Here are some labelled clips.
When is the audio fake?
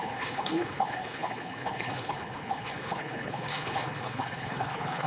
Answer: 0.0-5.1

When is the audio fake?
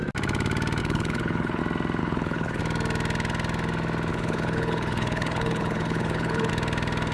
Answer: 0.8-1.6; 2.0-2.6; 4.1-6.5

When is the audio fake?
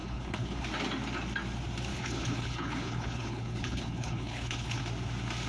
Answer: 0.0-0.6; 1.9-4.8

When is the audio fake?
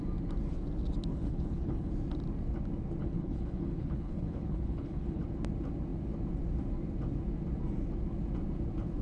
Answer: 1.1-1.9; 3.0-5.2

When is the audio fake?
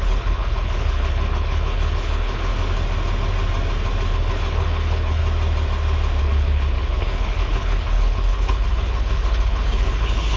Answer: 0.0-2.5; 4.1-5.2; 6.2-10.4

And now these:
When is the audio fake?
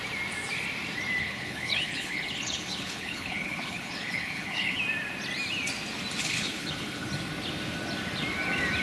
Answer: 1.2-4.8; 6.2-7.1